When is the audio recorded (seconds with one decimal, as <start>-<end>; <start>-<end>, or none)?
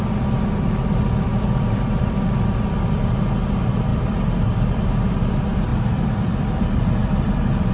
none